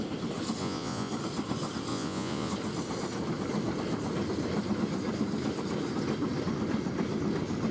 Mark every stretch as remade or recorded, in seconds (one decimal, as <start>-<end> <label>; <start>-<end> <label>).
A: 0.0-0.6 recorded; 0.6-1.1 remade; 1.1-1.9 recorded; 1.9-2.5 remade; 2.5-7.7 recorded